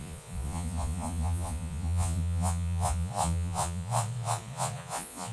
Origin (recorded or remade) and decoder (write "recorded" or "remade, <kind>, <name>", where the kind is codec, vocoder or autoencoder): remade, vocoder, Vocos